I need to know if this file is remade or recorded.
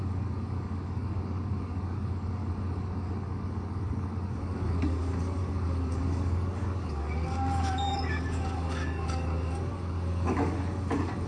remade